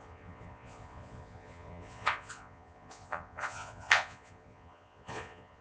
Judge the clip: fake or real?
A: fake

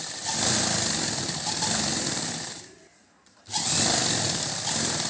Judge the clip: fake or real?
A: real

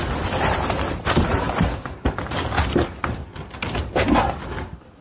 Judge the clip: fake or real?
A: real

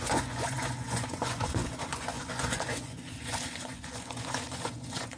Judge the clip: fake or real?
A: fake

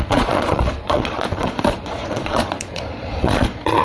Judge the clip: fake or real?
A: fake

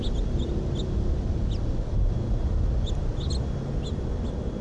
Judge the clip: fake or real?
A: real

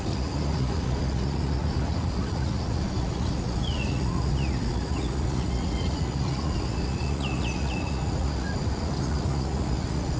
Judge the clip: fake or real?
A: fake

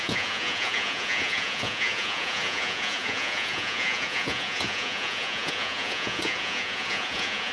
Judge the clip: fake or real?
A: fake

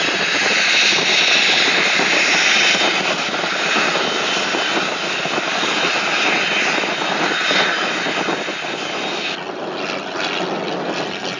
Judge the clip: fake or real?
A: real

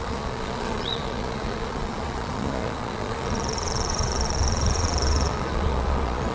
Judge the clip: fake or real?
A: fake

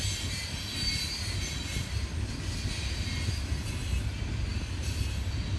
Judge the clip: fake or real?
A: real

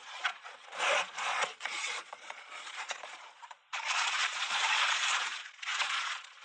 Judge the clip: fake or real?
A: fake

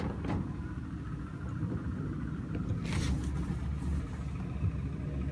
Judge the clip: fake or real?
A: real